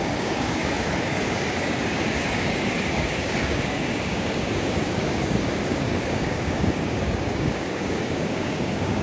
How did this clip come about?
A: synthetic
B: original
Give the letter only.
A